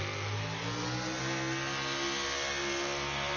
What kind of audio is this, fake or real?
real